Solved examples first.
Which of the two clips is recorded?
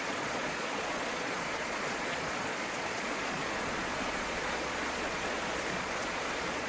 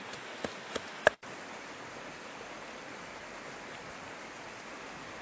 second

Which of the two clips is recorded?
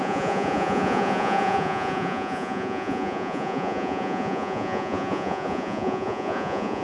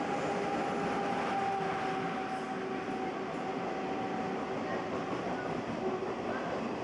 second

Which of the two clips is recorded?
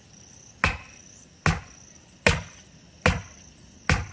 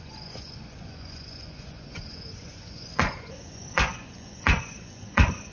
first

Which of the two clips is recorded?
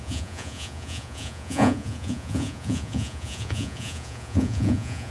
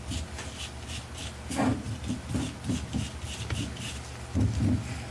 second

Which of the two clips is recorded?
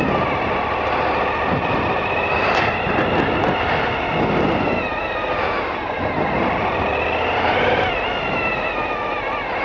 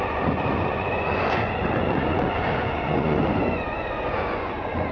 first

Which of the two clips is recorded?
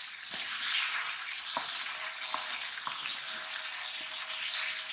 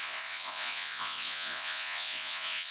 first